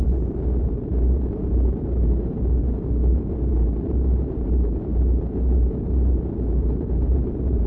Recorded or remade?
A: remade